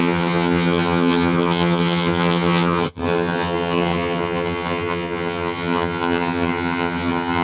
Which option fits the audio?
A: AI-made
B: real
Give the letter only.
A